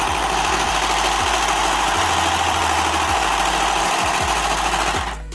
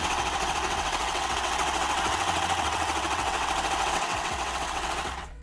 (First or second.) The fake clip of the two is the second